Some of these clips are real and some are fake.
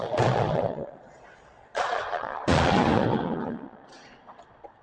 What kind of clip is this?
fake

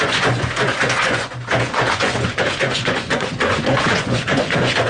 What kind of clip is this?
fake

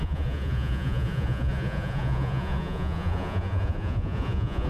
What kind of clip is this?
fake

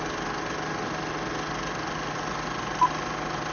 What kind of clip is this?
real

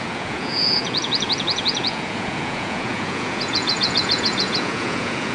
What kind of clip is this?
fake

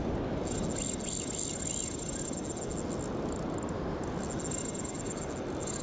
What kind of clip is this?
real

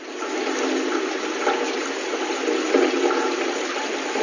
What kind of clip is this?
real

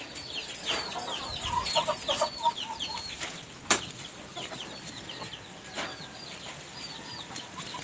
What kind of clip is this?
real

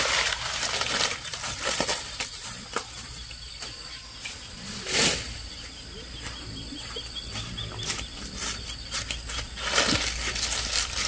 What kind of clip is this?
real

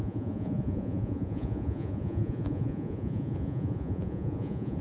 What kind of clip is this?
fake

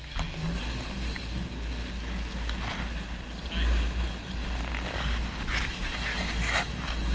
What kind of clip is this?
real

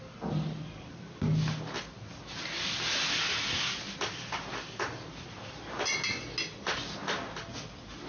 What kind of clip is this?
real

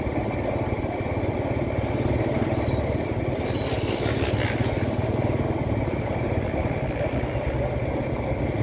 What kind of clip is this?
real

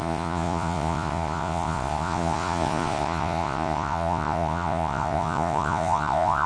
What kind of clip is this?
fake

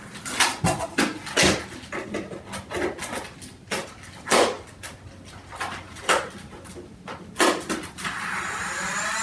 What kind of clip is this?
real